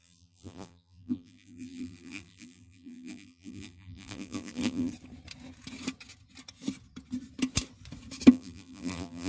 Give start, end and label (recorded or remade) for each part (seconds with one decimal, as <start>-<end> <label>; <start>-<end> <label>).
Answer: 0.0-4.9 remade; 4.9-8.3 recorded; 8.3-9.3 remade